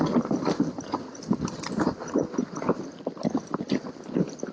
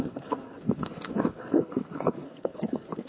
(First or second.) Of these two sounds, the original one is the first